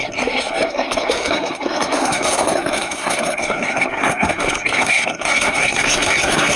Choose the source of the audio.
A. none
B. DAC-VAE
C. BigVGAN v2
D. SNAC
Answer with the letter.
D